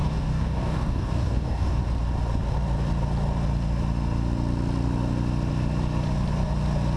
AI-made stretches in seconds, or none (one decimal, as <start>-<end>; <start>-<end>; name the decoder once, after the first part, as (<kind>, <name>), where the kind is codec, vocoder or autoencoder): 0.0-1.8 (codec, DAC)

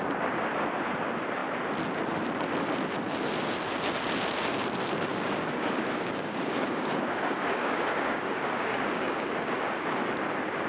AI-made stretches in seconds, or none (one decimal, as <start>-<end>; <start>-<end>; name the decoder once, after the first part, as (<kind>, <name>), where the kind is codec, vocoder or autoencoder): 5.1-10.1 (codec, DAC)